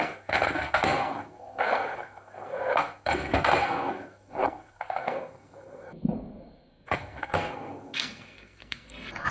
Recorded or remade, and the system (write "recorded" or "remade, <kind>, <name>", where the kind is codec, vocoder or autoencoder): remade, codec, SNAC